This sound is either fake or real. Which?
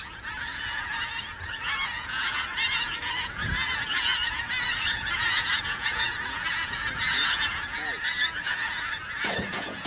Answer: fake